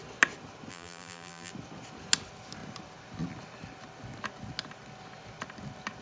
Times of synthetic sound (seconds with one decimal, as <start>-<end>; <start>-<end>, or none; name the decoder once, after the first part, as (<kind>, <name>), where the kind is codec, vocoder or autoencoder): 0.7-1.5 (vocoder, BigVGAN v2)